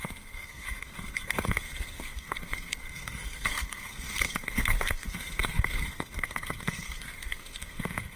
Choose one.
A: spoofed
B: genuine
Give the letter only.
A